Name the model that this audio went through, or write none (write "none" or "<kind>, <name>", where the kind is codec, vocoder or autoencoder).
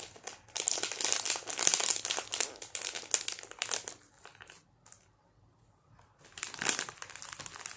none